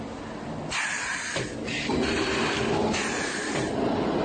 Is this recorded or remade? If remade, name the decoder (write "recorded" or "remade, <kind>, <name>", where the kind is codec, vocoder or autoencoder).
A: recorded